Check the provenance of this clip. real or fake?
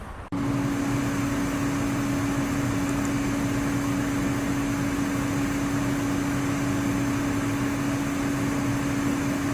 real